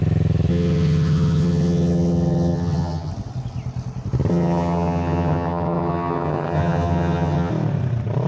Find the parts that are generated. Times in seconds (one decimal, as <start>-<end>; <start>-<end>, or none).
0.5-3.1; 4.3-7.5